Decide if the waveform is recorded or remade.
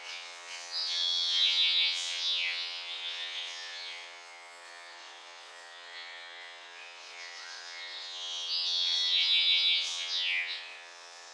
remade